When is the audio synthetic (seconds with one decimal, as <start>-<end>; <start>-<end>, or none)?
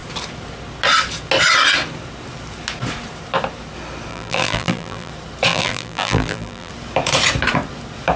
4.1-5.1; 5.5-6.7